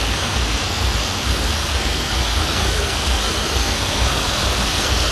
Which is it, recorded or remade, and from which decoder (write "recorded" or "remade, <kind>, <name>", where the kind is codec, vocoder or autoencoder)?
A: remade, codec, SNAC